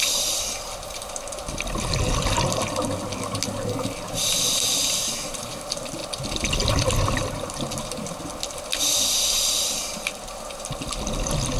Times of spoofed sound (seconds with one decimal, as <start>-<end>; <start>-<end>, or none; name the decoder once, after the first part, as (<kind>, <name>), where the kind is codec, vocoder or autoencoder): none